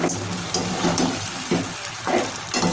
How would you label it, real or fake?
real